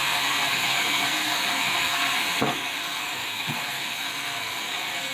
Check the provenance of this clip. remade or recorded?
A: remade